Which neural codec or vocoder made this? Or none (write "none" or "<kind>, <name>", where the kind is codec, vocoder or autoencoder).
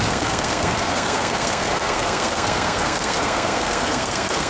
codec, SNAC